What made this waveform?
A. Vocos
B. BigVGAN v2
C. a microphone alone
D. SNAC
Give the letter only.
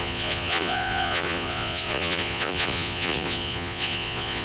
A